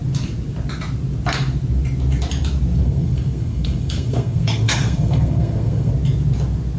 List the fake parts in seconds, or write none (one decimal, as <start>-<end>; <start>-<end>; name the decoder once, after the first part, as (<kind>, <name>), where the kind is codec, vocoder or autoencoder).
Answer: 2.8-5.9 (codec, SNAC)